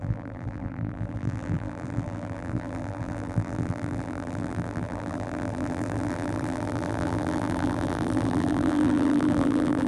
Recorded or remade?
remade